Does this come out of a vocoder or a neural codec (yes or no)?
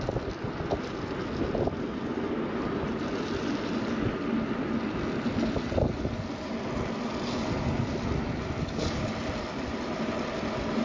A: no